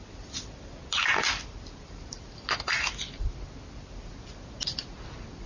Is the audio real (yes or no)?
yes